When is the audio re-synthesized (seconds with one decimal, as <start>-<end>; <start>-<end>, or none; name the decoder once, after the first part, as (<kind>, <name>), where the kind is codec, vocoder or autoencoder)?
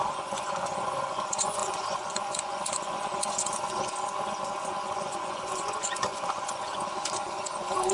0.0-7.9 (vocoder, Vocos)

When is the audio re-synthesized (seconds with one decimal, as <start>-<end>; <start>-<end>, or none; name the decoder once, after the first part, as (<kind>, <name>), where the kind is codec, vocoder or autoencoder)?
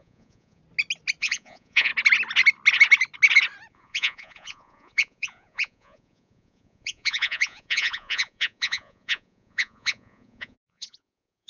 0.0-0.6 (vocoder, Vocos); 1.2-1.9; 3.7-11.5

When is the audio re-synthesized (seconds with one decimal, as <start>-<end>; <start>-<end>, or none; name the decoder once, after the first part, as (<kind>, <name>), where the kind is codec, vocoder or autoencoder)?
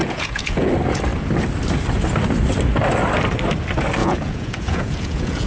0.0-0.7 (vocoder, Vocos); 4.0-5.5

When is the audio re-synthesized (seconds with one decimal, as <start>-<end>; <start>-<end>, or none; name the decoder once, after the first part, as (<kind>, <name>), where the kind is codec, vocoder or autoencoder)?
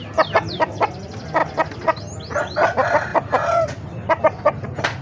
none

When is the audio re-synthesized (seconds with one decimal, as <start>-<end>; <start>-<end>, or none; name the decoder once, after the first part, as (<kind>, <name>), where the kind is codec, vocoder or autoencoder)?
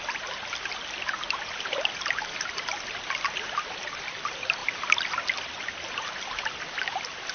none